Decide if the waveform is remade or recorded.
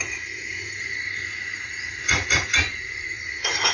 remade